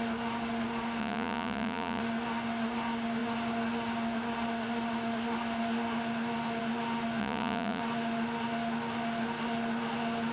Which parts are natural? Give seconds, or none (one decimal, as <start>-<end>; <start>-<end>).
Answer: 0.0-1.0; 2.0-7.2; 7.8-10.3